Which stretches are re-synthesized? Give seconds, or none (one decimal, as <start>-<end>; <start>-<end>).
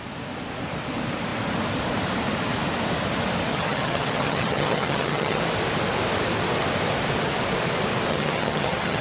3.5-5.4; 8.1-9.0